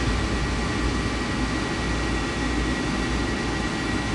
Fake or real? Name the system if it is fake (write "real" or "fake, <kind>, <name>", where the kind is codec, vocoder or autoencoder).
real